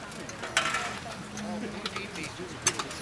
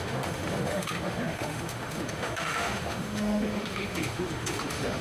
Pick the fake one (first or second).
second